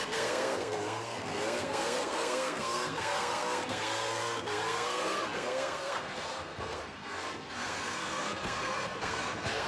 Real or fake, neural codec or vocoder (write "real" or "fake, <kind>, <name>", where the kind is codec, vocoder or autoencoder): fake, codec, SNAC